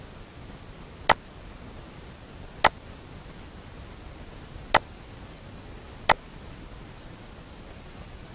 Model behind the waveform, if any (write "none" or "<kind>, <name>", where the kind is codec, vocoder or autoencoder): none